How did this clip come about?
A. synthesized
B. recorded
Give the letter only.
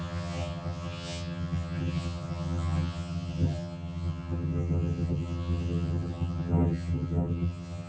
A